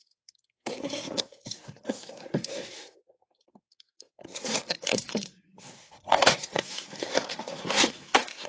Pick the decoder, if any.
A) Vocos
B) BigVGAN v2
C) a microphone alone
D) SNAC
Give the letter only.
D